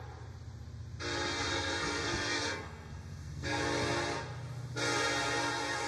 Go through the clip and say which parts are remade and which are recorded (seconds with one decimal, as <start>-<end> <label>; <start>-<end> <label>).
0.0-1.5 recorded; 1.5-3.6 remade; 3.6-5.9 recorded